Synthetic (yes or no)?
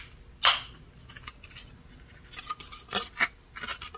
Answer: no